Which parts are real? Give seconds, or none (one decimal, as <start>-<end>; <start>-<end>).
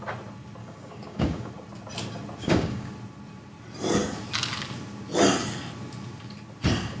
0.0-0.6; 1.5-2.4; 2.9-7.0